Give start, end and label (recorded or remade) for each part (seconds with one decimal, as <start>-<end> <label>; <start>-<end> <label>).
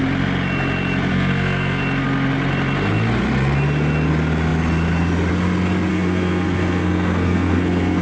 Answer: 0.0-1.1 recorded; 1.1-1.8 remade; 1.8-5.9 recorded; 5.9-8.0 remade